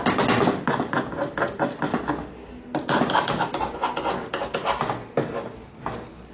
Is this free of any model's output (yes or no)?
yes